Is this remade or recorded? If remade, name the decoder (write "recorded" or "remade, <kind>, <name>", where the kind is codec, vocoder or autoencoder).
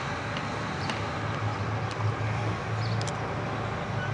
recorded